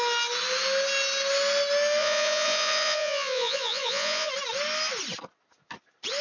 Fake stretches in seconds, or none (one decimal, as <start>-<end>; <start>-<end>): 2.0-4.3